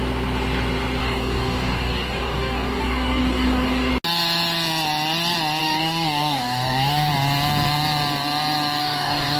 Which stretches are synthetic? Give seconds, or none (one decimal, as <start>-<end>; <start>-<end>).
1.0-3.9; 5.6-7.1; 8.8-9.4